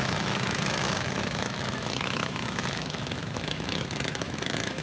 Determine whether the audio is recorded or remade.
remade